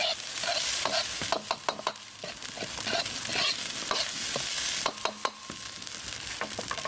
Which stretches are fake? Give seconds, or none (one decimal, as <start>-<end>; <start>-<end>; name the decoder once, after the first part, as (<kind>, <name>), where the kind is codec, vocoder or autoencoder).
none